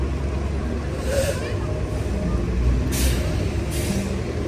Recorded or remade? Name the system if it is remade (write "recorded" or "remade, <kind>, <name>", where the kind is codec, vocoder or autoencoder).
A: recorded